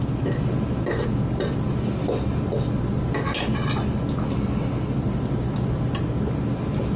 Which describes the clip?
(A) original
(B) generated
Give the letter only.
A